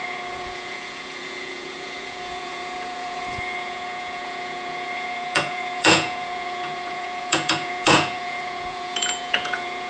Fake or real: fake